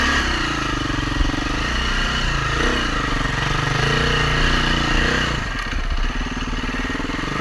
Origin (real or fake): real